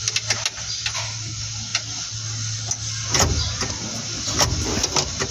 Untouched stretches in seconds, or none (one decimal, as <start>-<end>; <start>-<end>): 0.0-5.3